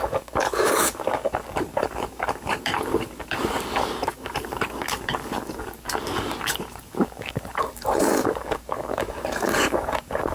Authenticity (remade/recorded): remade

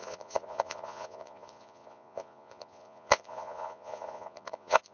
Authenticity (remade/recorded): remade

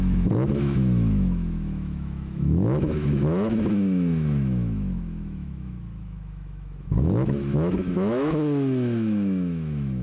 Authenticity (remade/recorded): remade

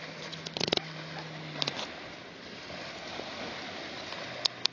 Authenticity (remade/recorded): recorded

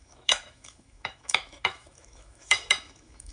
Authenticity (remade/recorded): remade